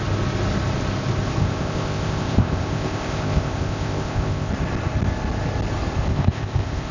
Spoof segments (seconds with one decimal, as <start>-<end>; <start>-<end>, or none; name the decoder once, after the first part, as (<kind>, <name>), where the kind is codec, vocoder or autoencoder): 1.4-4.5 (codec, ZipCodec); 6.1-6.9